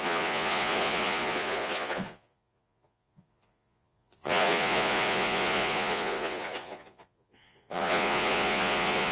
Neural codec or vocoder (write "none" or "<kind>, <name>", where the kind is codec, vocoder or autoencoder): vocoder, Vocos